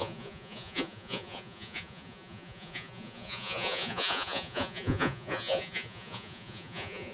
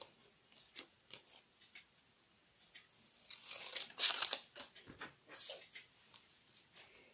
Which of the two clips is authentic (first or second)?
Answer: second